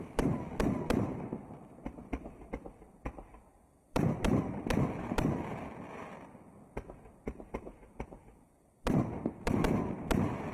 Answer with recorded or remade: remade